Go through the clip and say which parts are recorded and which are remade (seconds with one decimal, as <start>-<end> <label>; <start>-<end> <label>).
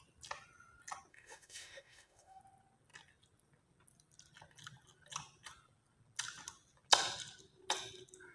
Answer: 0.0-1.1 recorded; 1.1-2.4 remade; 2.4-8.3 recorded